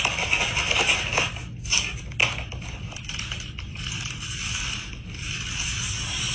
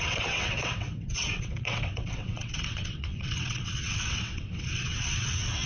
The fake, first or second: second